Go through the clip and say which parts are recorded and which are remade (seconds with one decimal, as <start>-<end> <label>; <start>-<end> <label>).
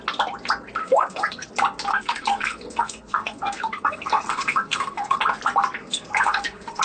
0.0-0.8 recorded; 0.8-1.5 remade; 1.5-1.9 recorded; 1.9-5.2 remade; 5.2-5.8 recorded; 5.8-6.8 remade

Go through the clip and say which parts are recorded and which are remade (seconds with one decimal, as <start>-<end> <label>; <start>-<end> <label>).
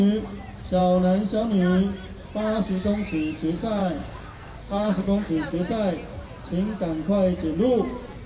0.0-3.8 recorded; 3.8-5.3 remade; 5.3-8.3 recorded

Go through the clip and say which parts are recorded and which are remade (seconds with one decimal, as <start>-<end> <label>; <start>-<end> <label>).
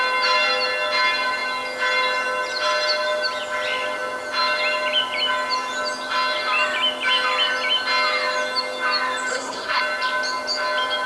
0.0-9.3 recorded; 9.3-9.8 remade; 9.8-11.1 recorded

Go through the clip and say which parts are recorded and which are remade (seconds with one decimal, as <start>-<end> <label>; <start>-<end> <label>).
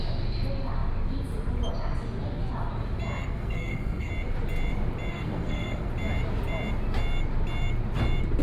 0.0-3.2 recorded; 3.2-4.1 remade; 4.1-5.1 recorded; 5.1-5.9 remade; 5.9-8.4 recorded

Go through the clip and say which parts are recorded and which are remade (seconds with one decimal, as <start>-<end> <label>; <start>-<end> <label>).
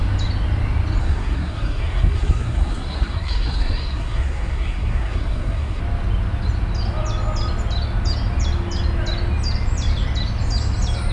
0.0-1.0 recorded; 1.0-5.8 remade; 5.8-11.1 recorded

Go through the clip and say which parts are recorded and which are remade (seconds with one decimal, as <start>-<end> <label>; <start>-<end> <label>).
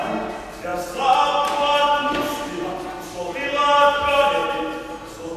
0.0-5.4 recorded